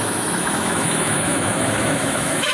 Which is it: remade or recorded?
remade